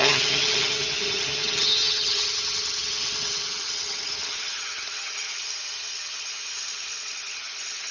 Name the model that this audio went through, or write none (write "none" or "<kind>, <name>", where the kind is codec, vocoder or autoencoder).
vocoder, HiFi-GAN